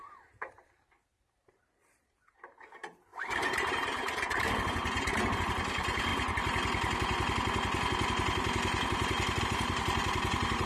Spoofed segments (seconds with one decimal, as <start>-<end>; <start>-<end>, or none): 0.0-6.1; 9.4-10.7